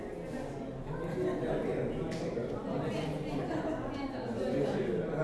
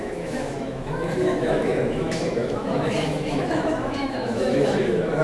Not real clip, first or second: second